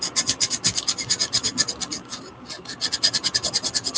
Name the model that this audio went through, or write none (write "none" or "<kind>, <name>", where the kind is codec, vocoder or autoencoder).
none